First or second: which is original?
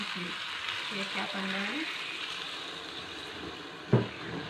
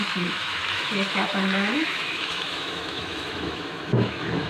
first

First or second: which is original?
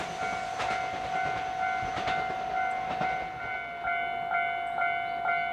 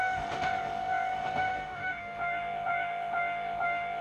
first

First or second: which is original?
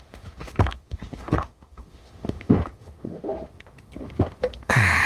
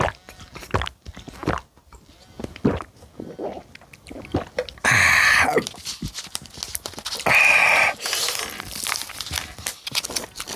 second